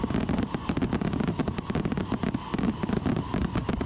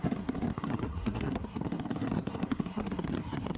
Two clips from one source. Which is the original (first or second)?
first